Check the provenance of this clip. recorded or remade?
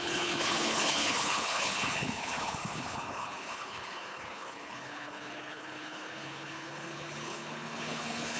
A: remade